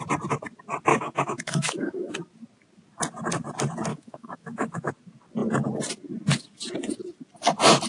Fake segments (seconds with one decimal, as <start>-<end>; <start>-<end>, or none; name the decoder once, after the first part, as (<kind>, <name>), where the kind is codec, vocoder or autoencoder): 0.9-2.1 (autoencoder, DAC-VAE); 3.9-4.9